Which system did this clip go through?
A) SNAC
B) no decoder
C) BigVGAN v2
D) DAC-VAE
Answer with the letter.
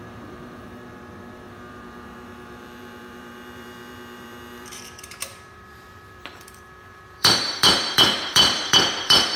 C